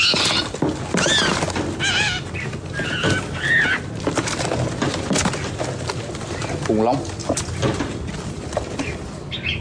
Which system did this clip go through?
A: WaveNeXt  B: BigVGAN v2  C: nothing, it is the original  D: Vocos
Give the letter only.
C